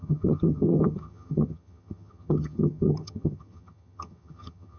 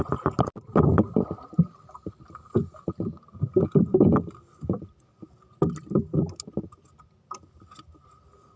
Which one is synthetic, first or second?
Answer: first